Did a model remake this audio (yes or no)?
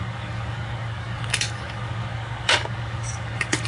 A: yes